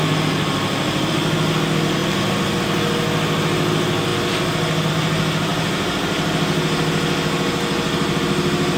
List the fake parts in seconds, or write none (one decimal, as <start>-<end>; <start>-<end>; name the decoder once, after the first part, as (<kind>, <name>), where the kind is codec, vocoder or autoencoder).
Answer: none